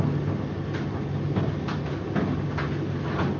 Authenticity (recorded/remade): recorded